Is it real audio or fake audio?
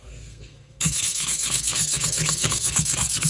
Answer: fake